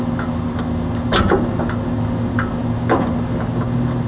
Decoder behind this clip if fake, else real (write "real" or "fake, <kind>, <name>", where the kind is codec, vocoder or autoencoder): real